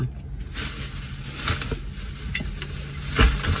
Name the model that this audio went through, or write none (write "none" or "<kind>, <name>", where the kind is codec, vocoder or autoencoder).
none